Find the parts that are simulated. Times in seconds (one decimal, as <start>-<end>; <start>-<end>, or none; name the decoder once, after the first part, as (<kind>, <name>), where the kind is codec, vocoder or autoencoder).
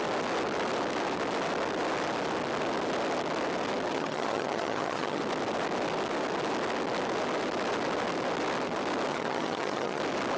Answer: 3.9-5.2 (vocoder, HiFi-GAN); 9.1-10.0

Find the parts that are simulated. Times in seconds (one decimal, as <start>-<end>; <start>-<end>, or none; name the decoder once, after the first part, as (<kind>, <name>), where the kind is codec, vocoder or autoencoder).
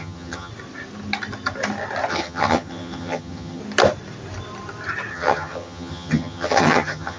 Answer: 0.0-0.5 (vocoder, HiFi-GAN); 2.1-3.6; 5.1-7.2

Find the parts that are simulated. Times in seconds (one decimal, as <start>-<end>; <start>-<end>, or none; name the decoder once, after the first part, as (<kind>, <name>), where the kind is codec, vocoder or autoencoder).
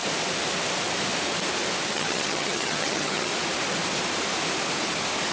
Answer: 1.9-3.3 (vocoder, HiFi-GAN)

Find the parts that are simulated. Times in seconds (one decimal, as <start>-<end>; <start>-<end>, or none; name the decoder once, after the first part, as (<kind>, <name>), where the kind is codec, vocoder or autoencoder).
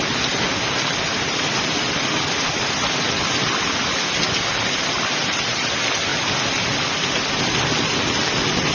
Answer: none